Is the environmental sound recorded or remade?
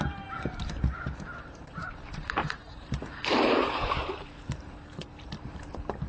remade